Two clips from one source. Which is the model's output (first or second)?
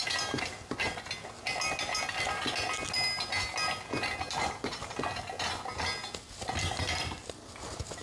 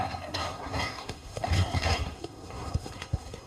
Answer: second